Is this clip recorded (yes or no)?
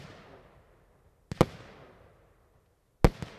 yes